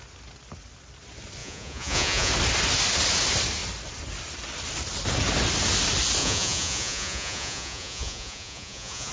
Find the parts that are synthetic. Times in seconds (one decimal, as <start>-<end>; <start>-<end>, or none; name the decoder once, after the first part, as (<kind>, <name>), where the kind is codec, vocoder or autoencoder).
1.4-2.3 (vocoder, Vocos); 6.2-9.1